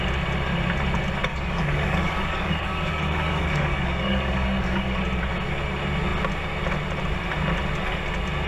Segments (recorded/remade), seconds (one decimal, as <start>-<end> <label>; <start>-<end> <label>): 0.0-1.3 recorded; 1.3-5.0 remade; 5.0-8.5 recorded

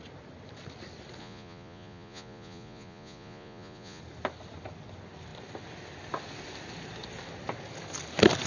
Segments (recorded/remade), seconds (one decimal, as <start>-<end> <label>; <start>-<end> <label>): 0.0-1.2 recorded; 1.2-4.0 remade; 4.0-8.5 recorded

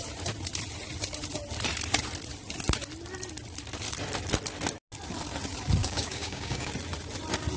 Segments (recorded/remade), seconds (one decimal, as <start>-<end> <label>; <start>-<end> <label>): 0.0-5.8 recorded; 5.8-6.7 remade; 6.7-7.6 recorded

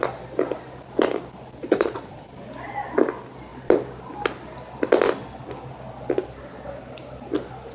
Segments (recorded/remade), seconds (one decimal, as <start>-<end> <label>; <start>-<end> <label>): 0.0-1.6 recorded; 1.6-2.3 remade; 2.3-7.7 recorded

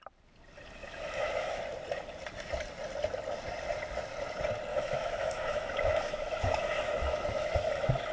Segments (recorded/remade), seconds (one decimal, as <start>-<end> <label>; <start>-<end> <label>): 0.0-0.8 recorded; 0.8-1.6 remade; 1.6-4.7 recorded; 4.7-8.1 remade

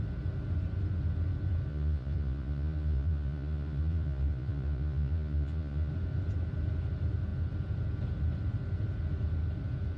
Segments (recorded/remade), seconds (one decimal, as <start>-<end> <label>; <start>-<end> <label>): 0.0-1.7 recorded; 1.7-5.9 remade; 5.9-10.0 recorded

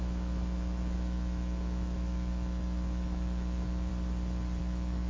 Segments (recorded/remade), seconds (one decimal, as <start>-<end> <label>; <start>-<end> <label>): 0.0-3.9 remade; 3.9-4.6 recorded; 4.6-5.1 remade

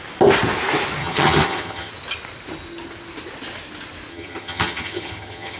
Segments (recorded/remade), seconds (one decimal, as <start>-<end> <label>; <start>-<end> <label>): 0.0-1.0 recorded; 1.0-1.9 remade; 1.9-4.1 recorded; 4.1-5.6 remade